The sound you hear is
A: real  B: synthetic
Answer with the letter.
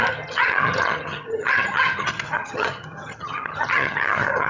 B